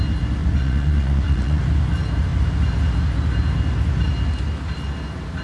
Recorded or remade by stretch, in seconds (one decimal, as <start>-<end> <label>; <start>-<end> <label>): 0.0-0.4 recorded; 0.4-1.6 remade; 1.6-5.4 recorded

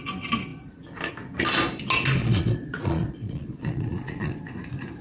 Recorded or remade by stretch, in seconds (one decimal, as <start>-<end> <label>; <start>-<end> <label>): 0.0-2.2 recorded; 2.2-4.4 remade; 4.4-5.0 recorded